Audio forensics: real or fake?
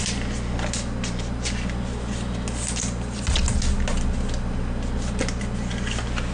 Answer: real